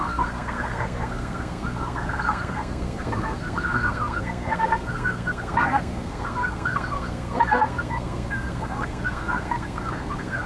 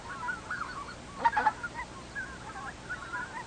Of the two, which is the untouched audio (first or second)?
second